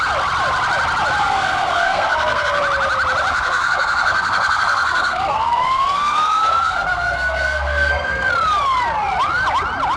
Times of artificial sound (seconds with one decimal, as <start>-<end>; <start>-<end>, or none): 1.2-2.6; 3.3-8.3